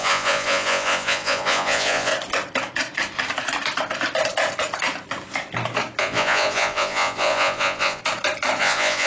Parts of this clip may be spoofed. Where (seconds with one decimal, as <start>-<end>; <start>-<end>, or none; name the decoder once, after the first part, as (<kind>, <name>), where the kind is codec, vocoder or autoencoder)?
0.0-2.1 (vocoder, Vocos); 6.0-8.0; 8.6-9.1